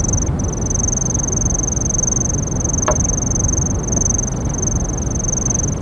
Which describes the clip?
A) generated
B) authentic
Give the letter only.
B